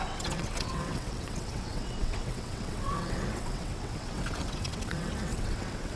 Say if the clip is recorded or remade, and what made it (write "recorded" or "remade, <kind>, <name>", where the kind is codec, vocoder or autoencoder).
remade, vocoder, WaveNeXt